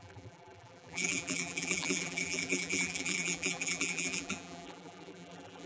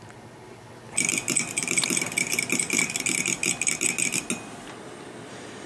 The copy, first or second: first